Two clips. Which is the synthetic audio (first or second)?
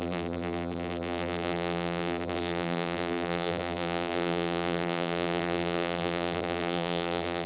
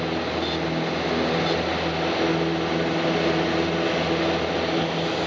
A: first